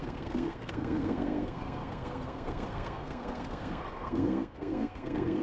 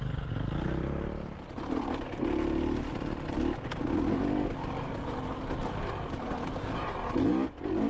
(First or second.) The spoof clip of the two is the first